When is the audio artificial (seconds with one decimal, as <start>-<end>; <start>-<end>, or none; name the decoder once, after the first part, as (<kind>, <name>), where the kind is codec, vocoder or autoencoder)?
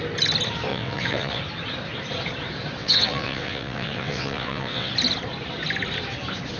0.7-1.4 (vocoder, WaveNeXt); 2.8-4.9